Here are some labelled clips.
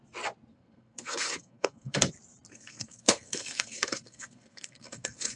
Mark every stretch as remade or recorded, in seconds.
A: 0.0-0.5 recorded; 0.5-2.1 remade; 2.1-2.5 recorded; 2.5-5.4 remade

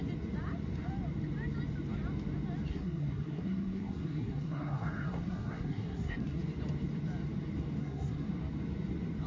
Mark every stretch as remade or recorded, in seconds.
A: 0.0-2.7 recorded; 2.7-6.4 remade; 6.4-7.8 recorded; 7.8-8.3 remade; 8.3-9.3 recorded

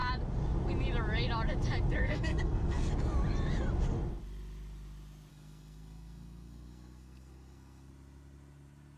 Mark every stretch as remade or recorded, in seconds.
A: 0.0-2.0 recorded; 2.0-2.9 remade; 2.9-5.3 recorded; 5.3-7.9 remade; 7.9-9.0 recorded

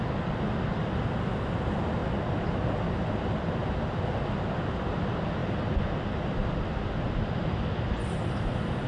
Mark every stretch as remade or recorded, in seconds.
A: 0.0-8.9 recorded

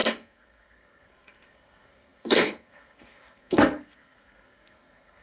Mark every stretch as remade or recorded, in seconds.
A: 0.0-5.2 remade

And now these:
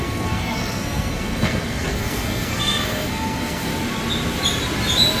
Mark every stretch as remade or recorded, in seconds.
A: 0.0-3.7 remade; 3.7-5.2 recorded